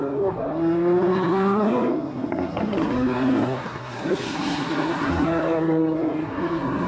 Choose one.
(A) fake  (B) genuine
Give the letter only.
A